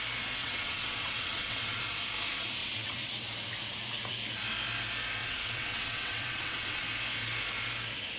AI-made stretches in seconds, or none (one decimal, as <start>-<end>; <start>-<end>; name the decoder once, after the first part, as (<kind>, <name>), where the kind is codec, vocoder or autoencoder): 0.4-1.8 (vocoder, WaveNeXt); 2.6-3.1; 5.2-6.8